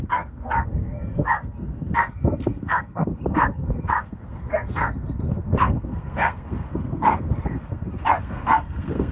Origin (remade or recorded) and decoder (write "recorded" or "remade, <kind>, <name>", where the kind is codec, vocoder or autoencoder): remade, codec, SNAC